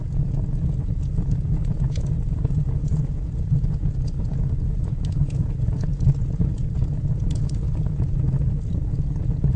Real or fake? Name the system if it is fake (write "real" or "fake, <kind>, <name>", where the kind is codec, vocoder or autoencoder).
fake, vocoder, Vocos